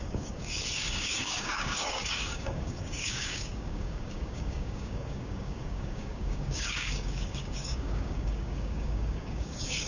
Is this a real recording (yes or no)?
no